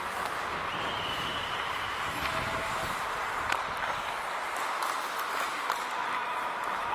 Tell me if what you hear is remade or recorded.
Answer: recorded